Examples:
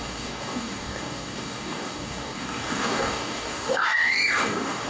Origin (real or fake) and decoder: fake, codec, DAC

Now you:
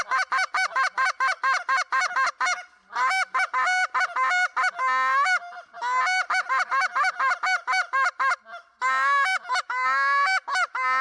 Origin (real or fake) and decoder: real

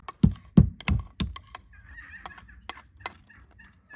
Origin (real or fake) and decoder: real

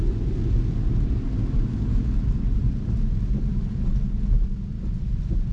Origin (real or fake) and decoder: real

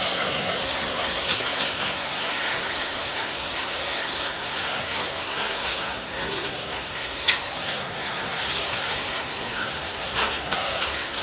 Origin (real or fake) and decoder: fake, codec, SNAC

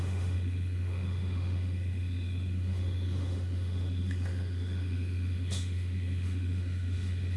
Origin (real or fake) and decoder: fake, autoencoder, DAC-VAE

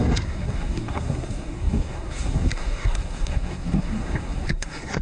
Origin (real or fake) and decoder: fake, codec, SNAC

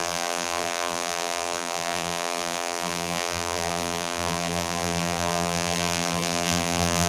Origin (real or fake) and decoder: fake, vocoder, BigVGAN v2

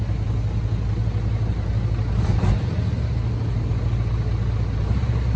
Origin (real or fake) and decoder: real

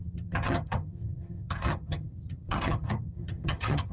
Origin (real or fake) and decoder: fake, vocoder, HiFi-GAN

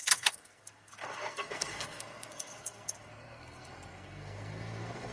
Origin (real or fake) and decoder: fake, codec, SNAC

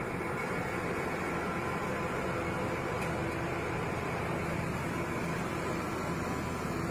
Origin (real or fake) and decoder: real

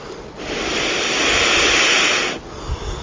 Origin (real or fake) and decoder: real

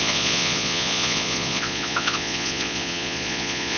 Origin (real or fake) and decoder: fake, vocoder, Vocos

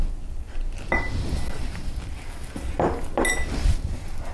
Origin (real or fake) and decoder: real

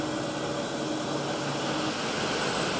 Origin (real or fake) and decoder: real